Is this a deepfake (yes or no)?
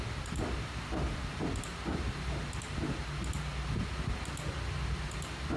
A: no